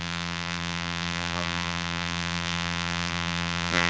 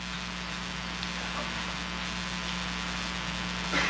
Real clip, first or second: second